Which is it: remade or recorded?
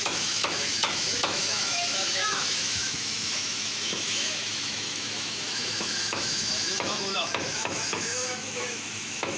remade